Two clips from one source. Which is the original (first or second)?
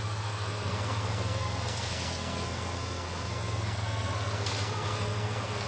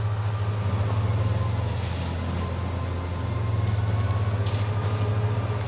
second